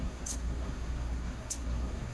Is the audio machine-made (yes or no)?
yes